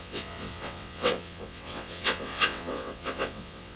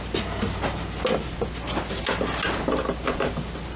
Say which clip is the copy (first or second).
first